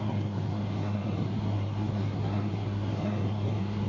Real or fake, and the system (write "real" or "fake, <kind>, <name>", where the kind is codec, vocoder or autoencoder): fake, codec, SNAC